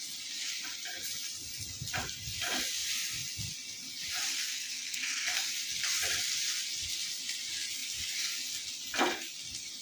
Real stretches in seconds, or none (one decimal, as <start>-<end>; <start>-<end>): 0.0-4.3; 5.5-9.8